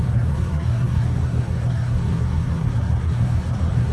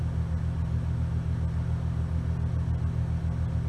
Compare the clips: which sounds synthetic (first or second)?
first